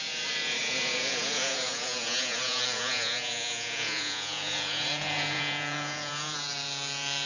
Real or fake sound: fake